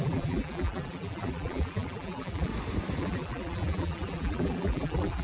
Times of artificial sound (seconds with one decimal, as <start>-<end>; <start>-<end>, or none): 0.0-2.5; 3.0-5.2